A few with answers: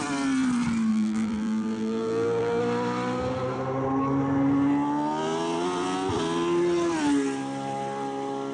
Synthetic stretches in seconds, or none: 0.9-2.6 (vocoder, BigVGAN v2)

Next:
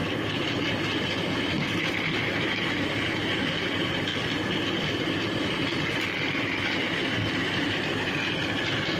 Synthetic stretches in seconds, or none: 0.0-4.1 (vocoder, BigVGAN v2); 5.0-6.8; 7.3-9.0

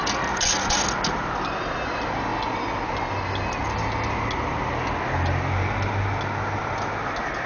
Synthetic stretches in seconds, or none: none

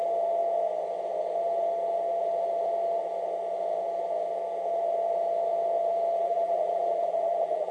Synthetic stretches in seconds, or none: 6.2-7.7 (vocoder, BigVGAN v2)